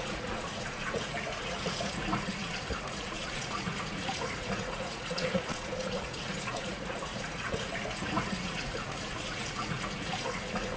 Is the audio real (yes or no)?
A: no